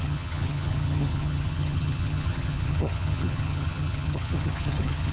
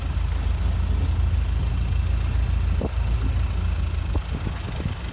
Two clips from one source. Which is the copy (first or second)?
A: first